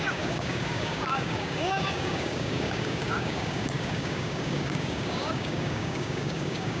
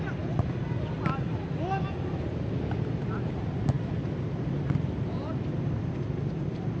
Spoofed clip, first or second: first